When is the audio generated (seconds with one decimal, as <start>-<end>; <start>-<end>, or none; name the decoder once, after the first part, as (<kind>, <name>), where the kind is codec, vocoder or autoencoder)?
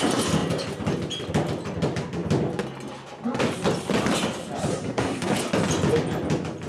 4.7-5.3 (codec, SNAC)